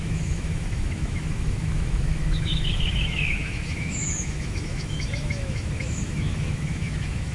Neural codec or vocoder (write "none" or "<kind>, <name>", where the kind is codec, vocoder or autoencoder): autoencoder, DAC-VAE